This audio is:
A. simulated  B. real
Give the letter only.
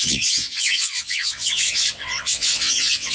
A